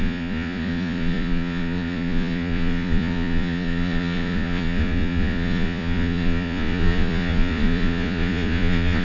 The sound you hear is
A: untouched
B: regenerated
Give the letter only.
B